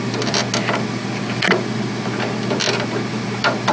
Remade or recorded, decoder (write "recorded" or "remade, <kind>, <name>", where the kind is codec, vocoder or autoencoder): recorded